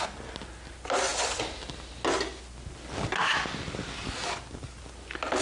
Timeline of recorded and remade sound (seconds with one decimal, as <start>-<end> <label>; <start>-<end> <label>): 0.0-5.4 recorded

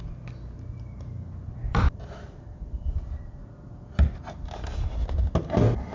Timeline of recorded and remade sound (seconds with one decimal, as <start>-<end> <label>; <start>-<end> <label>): 0.0-0.7 recorded; 0.7-3.2 remade; 3.2-5.9 recorded